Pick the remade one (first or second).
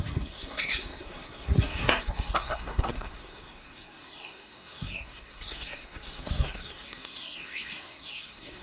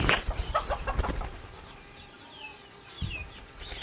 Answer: first